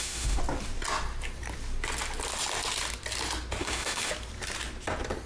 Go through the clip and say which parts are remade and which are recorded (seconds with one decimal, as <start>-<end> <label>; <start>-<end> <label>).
0.0-0.4 remade; 0.4-3.6 recorded; 3.6-4.1 remade; 4.1-5.3 recorded